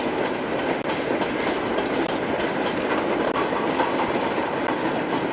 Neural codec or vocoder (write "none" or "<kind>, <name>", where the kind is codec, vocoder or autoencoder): none